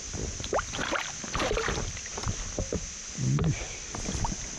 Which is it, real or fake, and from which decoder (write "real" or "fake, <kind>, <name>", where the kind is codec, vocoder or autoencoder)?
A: real